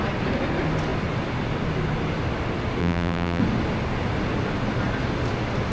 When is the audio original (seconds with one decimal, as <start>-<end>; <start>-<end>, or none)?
0.0-2.8; 3.4-5.7